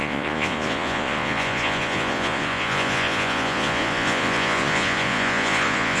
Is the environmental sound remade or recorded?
remade